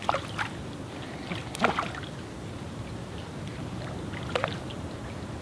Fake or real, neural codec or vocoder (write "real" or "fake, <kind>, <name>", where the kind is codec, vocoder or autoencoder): real